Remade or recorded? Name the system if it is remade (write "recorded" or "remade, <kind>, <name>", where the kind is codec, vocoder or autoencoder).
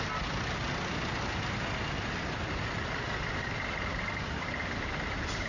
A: recorded